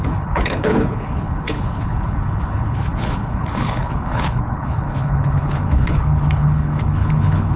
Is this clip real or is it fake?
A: fake